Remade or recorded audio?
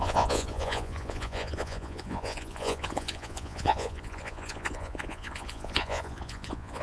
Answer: remade